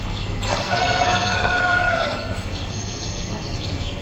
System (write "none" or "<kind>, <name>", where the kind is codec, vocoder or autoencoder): codec, SNAC